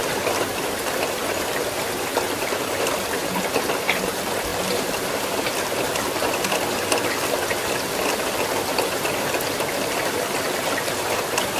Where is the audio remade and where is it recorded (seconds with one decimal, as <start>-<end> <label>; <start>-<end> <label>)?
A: 0.0-4.5 recorded; 4.5-5.8 remade; 5.8-11.6 recorded